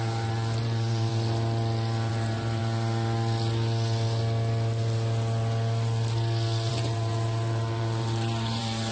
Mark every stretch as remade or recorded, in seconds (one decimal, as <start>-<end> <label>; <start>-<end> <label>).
0.0-1.1 remade; 1.1-2.1 recorded; 2.1-2.6 remade; 2.6-6.7 recorded; 6.7-8.9 remade